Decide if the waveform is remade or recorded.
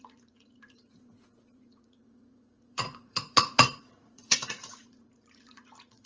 remade